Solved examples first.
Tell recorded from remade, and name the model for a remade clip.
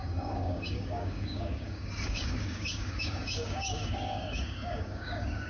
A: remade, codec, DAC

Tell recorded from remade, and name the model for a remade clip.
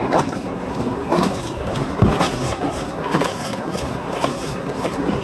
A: remade, codec, SNAC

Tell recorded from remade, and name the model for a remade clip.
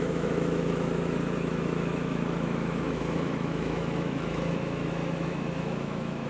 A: remade, autoencoder, DAC-VAE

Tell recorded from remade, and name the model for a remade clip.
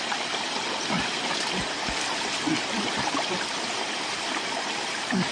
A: recorded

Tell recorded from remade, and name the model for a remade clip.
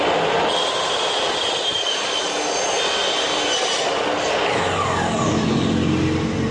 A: recorded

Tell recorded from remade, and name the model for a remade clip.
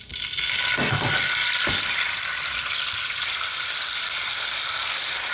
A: recorded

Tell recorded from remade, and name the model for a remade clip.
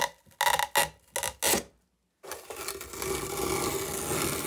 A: recorded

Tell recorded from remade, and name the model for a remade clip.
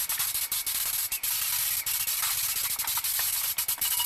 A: recorded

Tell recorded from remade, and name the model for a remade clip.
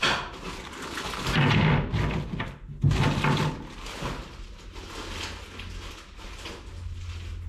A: recorded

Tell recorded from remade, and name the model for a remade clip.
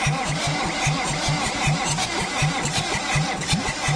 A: recorded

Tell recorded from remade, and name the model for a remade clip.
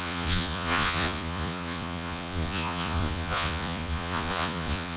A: remade, vocoder, Vocos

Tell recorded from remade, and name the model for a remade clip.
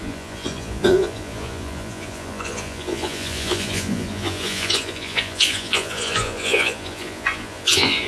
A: remade, vocoder, Vocos